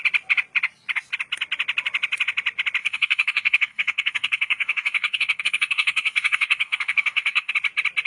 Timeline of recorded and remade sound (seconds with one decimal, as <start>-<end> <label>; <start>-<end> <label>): 0.0-2.8 recorded; 2.8-7.5 remade; 7.5-8.1 recorded